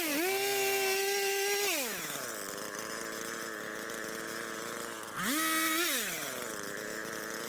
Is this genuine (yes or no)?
yes